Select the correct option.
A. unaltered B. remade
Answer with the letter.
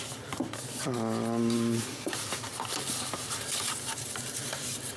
A